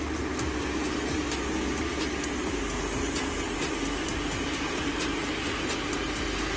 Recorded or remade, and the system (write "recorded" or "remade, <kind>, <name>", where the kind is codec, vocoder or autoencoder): recorded